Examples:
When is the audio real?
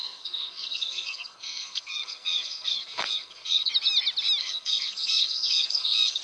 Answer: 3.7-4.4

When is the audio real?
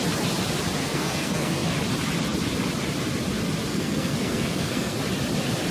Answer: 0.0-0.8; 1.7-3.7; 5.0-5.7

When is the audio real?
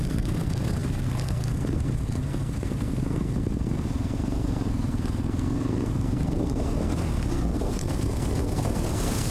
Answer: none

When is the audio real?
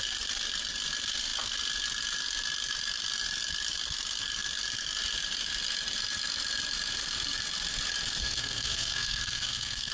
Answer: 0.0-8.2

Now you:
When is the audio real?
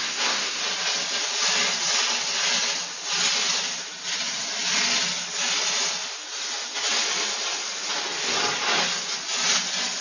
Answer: 0.6-10.0